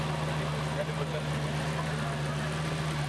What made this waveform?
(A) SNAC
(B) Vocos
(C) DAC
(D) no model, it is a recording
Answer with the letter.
D